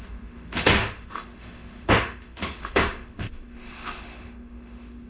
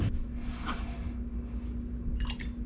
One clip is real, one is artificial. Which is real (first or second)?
second